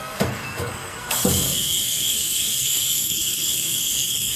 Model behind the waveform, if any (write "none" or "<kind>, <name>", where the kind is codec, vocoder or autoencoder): codec, SNAC